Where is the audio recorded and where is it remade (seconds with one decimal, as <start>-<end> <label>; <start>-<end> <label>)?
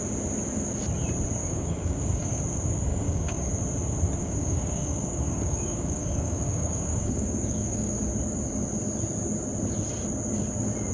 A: 0.0-1.4 recorded; 1.4-2.4 remade; 2.4-2.9 recorded; 2.9-3.5 remade; 3.5-4.2 recorded; 4.2-8.0 remade; 8.0-10.9 recorded